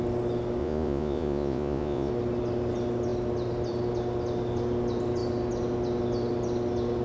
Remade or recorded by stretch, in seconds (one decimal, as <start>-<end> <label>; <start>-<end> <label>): 0.0-0.6 recorded; 0.6-2.1 remade; 2.1-7.0 recorded